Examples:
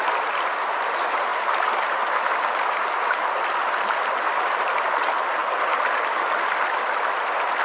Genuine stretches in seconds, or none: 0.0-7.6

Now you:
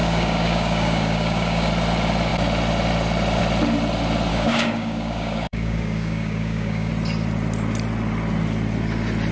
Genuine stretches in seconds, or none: 1.7-4.3; 6.9-9.3

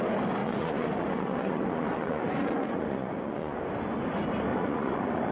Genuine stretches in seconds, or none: 0.0-0.4; 3.6-4.5